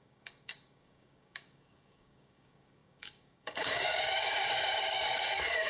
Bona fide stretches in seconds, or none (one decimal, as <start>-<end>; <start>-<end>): none